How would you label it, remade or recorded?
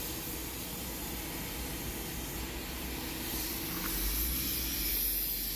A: recorded